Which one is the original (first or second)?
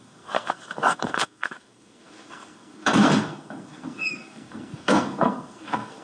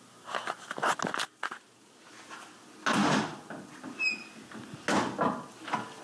second